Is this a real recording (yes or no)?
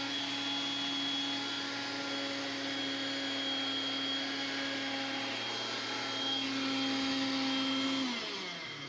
yes